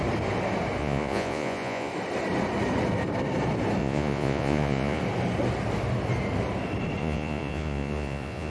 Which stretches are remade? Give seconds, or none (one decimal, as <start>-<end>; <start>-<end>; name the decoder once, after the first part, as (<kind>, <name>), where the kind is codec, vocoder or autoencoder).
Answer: 0.8-1.9 (vocoder, Vocos); 3.8-5.0; 7.0-8.5